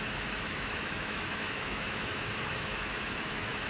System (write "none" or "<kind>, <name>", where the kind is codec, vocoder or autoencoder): autoencoder, DAC-VAE